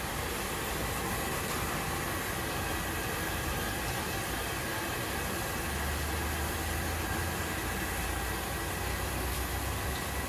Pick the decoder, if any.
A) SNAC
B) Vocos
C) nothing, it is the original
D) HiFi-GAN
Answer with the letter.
C